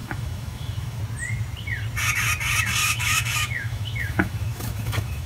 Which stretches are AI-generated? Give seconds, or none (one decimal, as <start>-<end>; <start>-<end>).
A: 0.0-1.0; 2.8-5.3